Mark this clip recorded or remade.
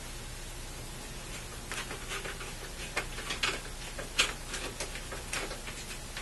recorded